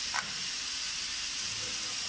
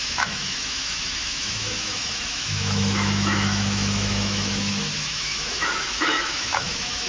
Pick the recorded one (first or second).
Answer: first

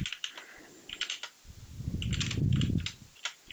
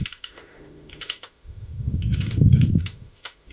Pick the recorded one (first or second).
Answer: first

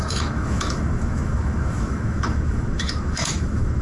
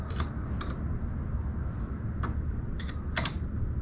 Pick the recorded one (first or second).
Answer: second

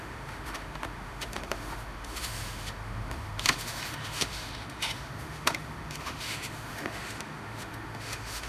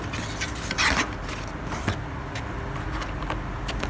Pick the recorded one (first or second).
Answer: second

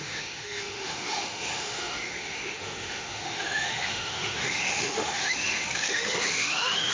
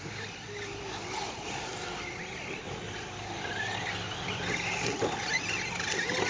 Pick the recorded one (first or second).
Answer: second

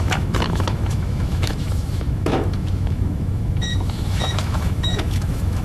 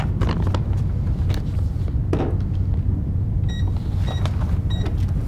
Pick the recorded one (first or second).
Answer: second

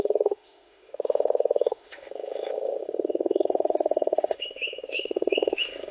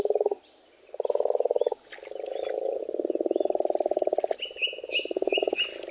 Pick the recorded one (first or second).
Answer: second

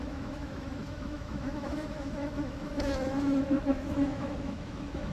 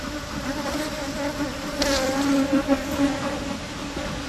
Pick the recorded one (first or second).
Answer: second